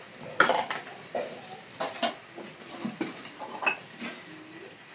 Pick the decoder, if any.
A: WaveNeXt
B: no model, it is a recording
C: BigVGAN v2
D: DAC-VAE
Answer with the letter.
B